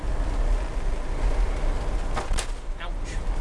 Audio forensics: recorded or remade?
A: recorded